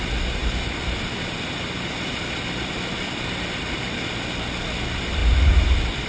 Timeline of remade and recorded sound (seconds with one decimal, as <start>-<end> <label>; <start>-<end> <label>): 0.0-0.4 recorded; 0.4-4.1 remade; 4.1-5.2 recorded; 5.2-6.1 remade